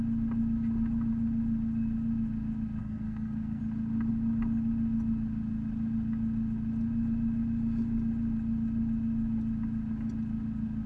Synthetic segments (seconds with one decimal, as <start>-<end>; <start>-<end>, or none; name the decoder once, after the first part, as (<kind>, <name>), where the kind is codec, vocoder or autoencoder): 2.8-3.6 (codec, SNAC)